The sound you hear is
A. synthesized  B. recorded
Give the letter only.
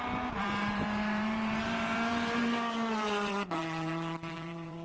A